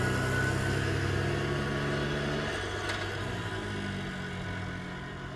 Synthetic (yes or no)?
no